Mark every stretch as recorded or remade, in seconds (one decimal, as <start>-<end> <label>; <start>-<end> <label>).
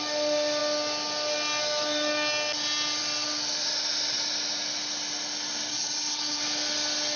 0.0-5.7 recorded; 5.7-6.4 remade; 6.4-7.2 recorded